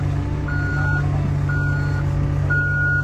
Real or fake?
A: real